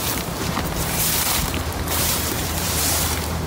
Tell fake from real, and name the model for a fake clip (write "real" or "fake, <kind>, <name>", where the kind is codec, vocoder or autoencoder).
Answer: fake, vocoder, BigVGAN v2